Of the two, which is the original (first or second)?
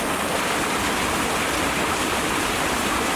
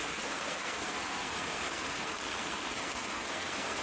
first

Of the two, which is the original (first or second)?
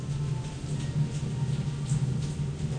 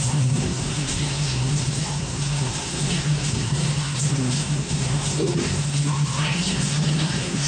first